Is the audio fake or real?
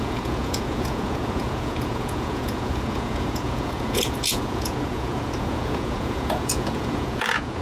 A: fake